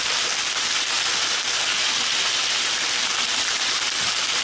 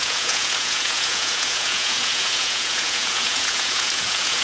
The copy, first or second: second